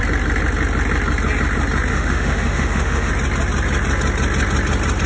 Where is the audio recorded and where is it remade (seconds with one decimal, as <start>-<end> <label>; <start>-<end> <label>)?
0.0-1.9 recorded; 1.9-3.1 remade; 3.1-5.1 recorded